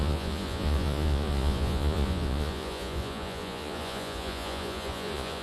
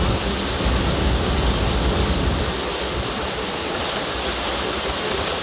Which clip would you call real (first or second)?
second